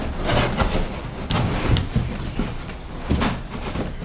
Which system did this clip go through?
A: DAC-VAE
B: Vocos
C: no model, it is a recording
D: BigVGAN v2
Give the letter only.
C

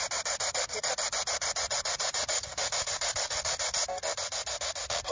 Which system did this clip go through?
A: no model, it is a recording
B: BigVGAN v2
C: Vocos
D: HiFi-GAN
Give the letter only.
A